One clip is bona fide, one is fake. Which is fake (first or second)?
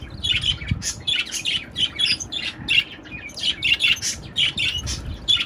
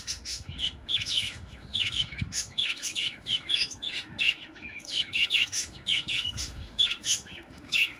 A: second